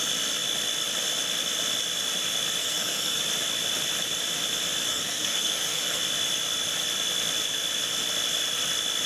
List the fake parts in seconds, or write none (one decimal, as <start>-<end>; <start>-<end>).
2.6-3.2; 4.9-6.0